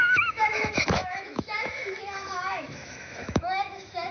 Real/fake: fake